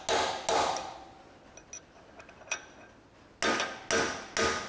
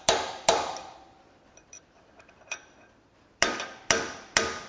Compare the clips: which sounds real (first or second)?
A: first